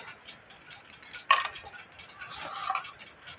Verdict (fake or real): real